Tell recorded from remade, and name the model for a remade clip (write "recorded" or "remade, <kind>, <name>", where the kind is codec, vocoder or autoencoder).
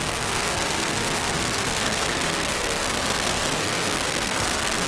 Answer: remade, codec, SNAC